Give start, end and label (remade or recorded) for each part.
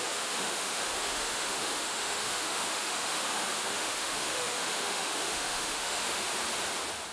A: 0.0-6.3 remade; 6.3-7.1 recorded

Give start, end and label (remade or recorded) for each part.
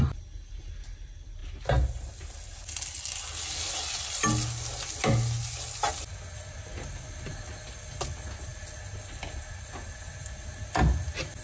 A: 0.0-11.4 recorded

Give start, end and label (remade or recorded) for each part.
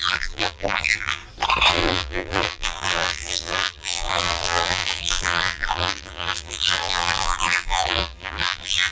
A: 0.0-1.2 remade; 1.2-1.7 recorded; 1.7-8.9 remade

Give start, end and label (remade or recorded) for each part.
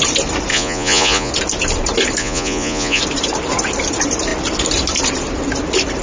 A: 0.0-0.5 recorded; 0.5-1.3 remade; 1.3-2.2 recorded; 2.2-3.0 remade; 3.0-6.0 recorded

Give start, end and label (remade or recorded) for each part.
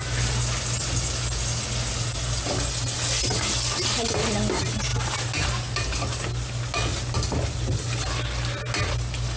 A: 0.0-9.4 recorded